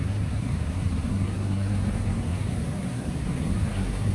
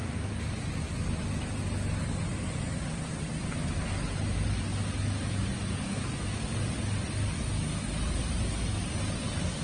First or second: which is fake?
first